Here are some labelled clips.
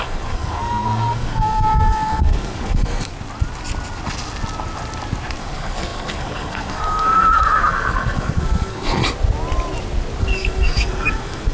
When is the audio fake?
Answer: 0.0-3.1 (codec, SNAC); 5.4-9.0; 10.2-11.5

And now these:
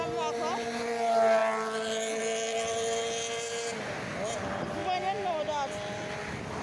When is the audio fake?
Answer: none

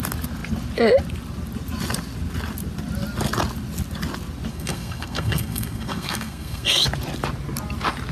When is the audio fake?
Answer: 4.5-6.8 (codec, SNAC)

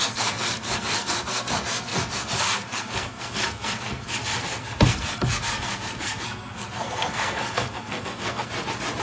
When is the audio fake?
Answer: 0.0-8.5 (codec, SNAC)

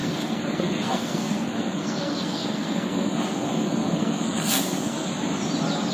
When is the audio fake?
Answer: 0.0-5.1 (codec, SNAC)

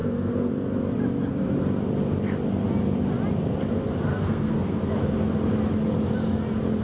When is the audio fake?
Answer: 0.0-0.5 (codec, SNAC); 4.1-4.9

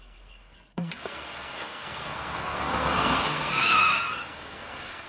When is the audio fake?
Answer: 0.0-5.1 (codec, SNAC)